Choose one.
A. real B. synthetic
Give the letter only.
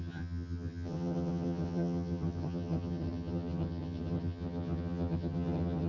B